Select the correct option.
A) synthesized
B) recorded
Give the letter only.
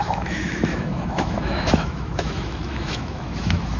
A